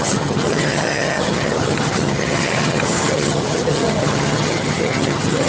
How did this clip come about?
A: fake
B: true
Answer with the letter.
A